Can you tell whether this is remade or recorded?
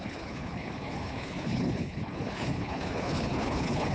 remade